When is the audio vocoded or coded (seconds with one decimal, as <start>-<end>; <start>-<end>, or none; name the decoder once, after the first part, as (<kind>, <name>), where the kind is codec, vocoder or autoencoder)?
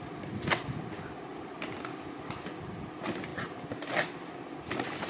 none